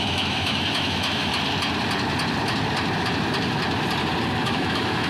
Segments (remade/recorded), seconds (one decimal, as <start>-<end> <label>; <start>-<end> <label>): 0.0-1.3 remade; 1.3-4.4 recorded; 4.4-5.1 remade